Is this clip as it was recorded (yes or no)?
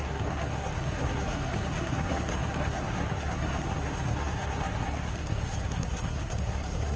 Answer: no